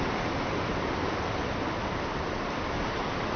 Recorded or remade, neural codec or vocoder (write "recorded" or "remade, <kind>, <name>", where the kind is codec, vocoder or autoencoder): recorded